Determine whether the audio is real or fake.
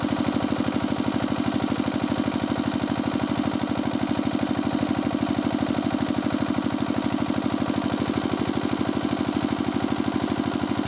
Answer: real